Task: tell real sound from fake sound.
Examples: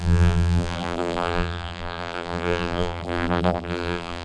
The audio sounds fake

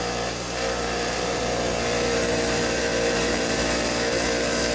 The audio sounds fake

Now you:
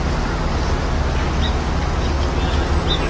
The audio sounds real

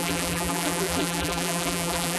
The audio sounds fake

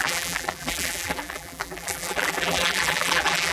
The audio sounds fake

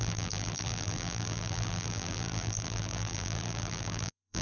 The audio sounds fake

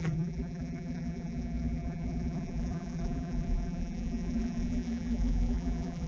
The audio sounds fake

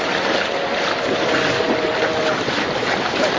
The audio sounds fake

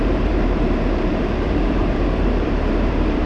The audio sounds fake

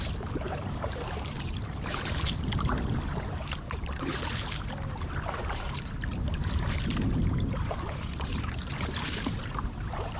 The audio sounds fake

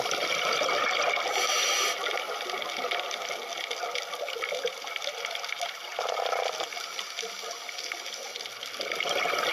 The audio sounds real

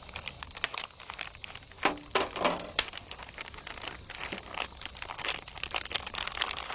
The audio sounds real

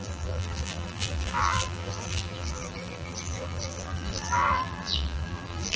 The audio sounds fake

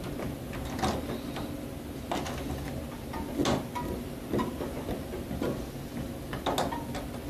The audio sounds real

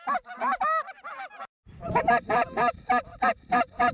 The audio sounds fake